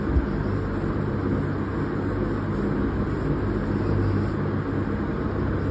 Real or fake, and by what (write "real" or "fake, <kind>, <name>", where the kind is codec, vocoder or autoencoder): real